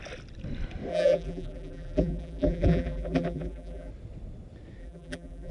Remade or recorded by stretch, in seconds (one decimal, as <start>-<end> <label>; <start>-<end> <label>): 0.0-0.9 recorded; 0.9-3.9 remade; 3.9-4.8 recorded; 4.8-5.5 remade

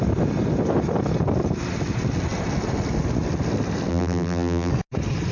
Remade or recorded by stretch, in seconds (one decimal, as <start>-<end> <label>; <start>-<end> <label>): 0.0-3.9 recorded; 3.9-4.7 remade; 4.7-5.3 recorded

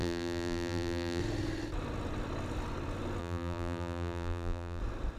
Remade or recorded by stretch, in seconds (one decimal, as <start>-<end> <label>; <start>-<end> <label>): 0.0-1.2 remade; 1.2-3.2 recorded; 3.2-4.8 remade; 4.8-5.2 recorded

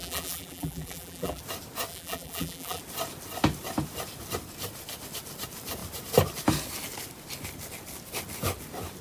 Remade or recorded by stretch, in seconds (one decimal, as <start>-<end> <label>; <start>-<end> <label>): 0.0-1.4 remade; 1.4-1.9 recorded; 1.9-2.8 remade; 2.8-9.0 recorded

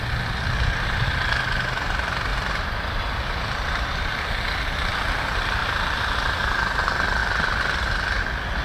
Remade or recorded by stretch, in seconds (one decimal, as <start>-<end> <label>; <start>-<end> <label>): 0.0-2.3 recorded; 2.3-4.1 remade; 4.1-5.6 recorded; 5.6-6.8 remade; 6.8-7.2 recorded; 7.2-8.2 remade; 8.2-8.6 recorded

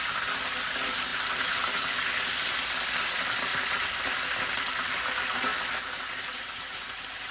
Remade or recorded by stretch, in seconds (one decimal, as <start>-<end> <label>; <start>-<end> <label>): 0.0-3.5 recorded; 3.5-4.9 remade; 4.9-5.5 recorded; 5.5-6.4 remade; 6.4-7.3 recorded

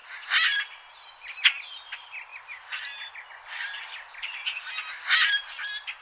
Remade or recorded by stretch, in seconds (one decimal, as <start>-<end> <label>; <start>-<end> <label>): 0.0-0.9 recorded; 0.9-6.0 remade